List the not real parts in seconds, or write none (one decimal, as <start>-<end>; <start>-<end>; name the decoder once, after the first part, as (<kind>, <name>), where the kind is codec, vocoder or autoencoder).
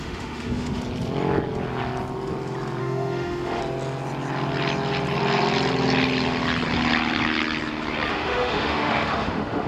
0.0-0.8 (autoencoder, DAC-VAE); 2.8-3.6; 8.1-9.7